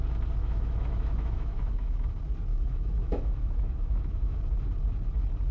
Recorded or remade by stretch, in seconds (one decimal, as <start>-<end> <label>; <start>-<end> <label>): 0.0-0.4 recorded; 0.4-2.1 remade; 2.1-2.5 recorded; 2.5-4.4 remade; 4.4-5.5 recorded